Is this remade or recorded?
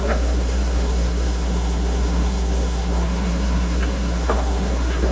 remade